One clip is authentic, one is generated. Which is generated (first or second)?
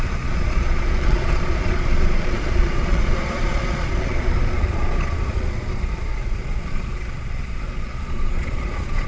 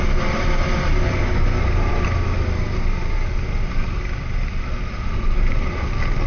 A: first